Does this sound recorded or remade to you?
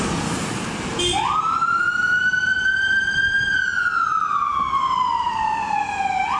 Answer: recorded